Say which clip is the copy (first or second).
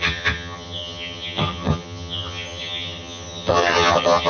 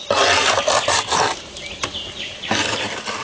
first